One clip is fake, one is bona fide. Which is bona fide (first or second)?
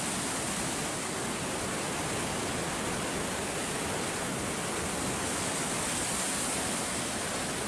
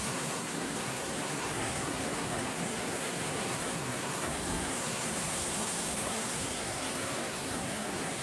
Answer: first